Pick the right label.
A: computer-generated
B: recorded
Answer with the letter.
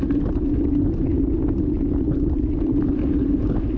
B